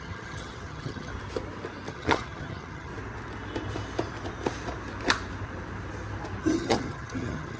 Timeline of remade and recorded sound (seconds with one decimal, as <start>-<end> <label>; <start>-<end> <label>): 0.0-1.1 remade; 1.1-1.9 recorded; 1.9-2.9 remade; 2.9-6.4 recorded; 6.4-7.6 remade

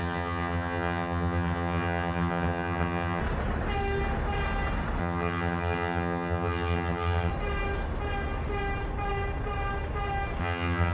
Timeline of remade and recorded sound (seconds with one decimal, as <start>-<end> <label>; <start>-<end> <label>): 0.0-3.2 remade; 3.2-5.0 recorded; 5.0-7.3 remade; 7.3-10.4 recorded; 10.4-10.9 remade

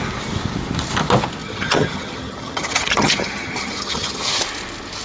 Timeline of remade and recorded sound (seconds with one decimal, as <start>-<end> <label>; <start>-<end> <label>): 0.0-1.4 recorded; 1.4-4.4 remade; 4.4-5.0 recorded

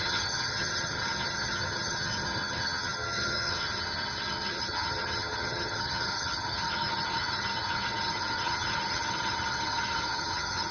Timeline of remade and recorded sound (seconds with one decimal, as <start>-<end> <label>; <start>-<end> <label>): 0.0-10.7 remade

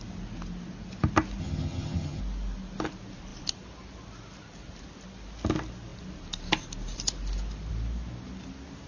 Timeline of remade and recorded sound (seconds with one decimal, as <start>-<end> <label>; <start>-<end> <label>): 0.0-1.4 recorded; 1.4-2.2 remade; 2.2-8.9 recorded

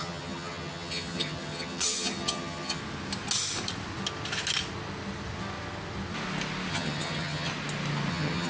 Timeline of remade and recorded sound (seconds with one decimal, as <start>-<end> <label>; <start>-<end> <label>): 0.0-2.8 remade; 2.8-6.7 recorded; 6.7-7.5 remade; 7.5-8.1 recorded; 8.1-8.5 remade

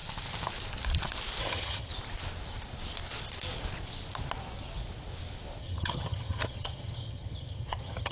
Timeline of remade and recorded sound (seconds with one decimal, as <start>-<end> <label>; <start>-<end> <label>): 0.0-1.4 recorded; 1.4-1.9 remade; 1.9-5.6 recorded; 5.6-8.1 remade